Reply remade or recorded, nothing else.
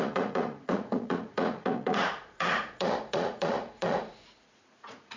remade